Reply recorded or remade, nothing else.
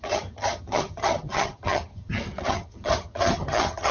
remade